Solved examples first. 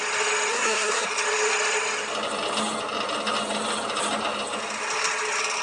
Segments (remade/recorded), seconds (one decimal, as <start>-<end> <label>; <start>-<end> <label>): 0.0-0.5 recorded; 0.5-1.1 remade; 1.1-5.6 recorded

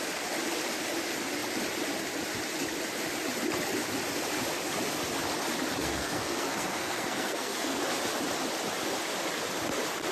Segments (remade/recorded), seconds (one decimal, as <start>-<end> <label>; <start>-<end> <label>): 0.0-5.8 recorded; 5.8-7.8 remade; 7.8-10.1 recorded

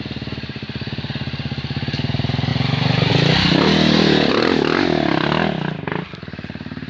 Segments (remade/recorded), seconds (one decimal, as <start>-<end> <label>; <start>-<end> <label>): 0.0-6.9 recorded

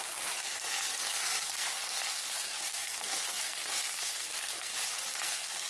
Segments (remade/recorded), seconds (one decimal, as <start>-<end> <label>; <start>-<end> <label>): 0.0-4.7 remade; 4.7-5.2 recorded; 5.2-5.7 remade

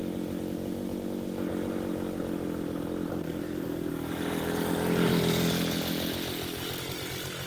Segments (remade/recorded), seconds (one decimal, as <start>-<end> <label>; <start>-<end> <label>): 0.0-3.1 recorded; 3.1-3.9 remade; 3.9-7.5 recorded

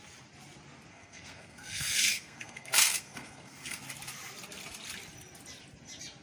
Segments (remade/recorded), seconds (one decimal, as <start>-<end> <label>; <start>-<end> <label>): 0.0-0.9 recorded; 0.9-3.8 remade; 3.8-6.2 recorded

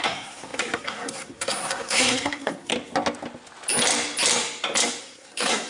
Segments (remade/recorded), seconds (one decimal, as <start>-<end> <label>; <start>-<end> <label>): 0.0-2.7 remade; 2.7-5.0 recorded; 5.0-5.7 remade